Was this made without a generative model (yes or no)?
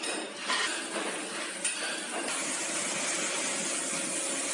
yes